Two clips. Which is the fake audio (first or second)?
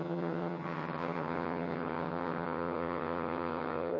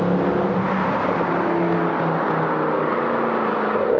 first